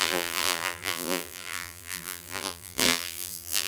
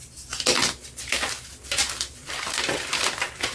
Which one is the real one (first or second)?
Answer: second